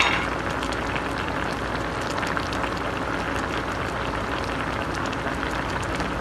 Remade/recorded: recorded